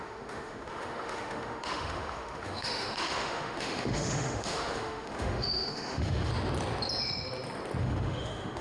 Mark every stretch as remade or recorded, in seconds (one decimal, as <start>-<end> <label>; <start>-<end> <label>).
0.0-6.3 remade; 6.3-7.8 recorded; 7.8-8.6 remade